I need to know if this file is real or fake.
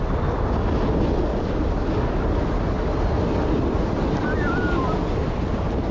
real